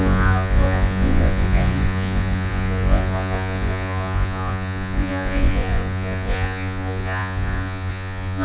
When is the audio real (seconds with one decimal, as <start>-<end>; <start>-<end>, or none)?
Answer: none